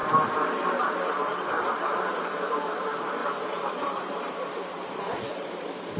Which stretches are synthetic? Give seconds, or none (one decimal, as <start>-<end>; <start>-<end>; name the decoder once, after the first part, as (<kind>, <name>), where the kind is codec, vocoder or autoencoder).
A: 0.0-6.0 (vocoder, BigVGAN v2)